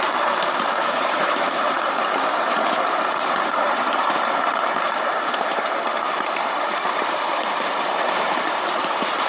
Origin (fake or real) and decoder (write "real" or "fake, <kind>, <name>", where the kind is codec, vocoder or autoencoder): fake, vocoder, BigVGAN v2